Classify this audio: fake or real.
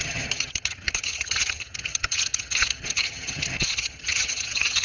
fake